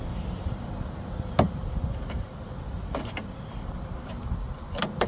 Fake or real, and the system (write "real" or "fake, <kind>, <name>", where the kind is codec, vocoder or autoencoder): real